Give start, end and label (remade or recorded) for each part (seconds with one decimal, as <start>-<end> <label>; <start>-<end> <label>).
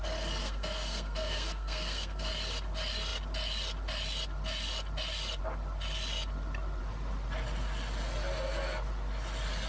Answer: 0.0-0.4 recorded; 0.4-2.3 remade; 2.3-9.7 recorded